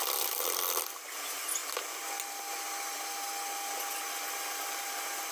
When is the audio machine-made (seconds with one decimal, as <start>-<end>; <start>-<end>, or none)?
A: none